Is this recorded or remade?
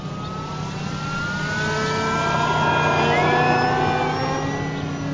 recorded